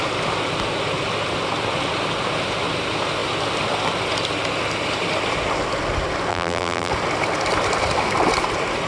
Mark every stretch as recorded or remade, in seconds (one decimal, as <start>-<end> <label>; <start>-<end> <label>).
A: 0.0-6.3 recorded; 6.3-6.9 remade; 6.9-8.9 recorded